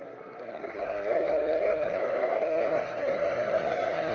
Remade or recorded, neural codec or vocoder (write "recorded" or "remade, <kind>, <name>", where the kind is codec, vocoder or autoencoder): remade, codec, SNAC